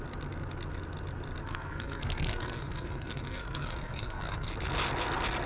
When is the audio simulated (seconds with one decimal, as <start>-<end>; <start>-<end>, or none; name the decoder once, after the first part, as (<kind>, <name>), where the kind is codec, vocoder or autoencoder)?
1.4-4.5 (codec, SNAC)